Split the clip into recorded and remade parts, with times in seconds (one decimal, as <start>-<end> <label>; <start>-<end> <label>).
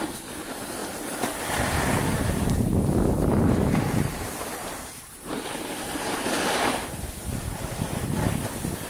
0.0-0.8 remade; 0.8-2.0 recorded; 2.0-6.8 remade; 6.8-8.9 recorded